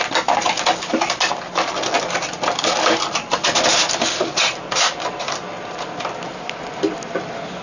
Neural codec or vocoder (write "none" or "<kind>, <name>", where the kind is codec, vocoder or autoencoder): none